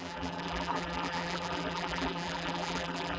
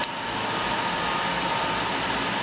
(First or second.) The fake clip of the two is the first